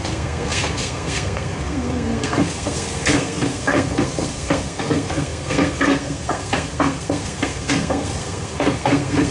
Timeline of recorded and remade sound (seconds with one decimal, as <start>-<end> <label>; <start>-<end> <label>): 0.0-9.3 remade